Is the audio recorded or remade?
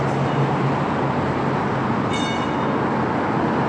recorded